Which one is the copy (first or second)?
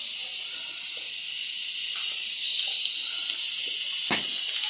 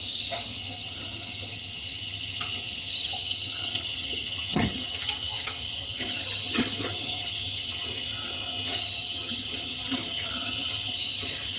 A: second